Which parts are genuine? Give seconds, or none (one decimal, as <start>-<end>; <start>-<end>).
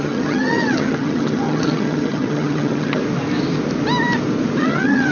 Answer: 3.0-4.6